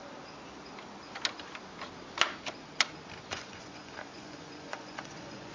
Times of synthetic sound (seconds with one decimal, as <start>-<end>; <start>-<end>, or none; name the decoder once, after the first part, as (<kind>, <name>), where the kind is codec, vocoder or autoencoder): 3.3-5.5 (vocoder, Vocos)